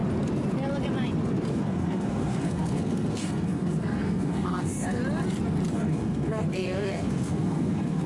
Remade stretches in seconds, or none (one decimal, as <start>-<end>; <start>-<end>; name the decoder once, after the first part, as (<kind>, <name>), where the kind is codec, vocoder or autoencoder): 1.5-5.0 (codec, SNAC); 5.7-8.1